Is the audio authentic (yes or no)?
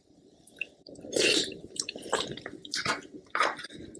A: no